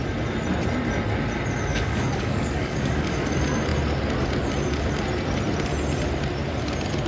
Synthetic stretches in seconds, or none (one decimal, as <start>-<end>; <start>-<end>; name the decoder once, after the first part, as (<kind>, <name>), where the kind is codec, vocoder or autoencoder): 1.7-3.3 (codec, DAC)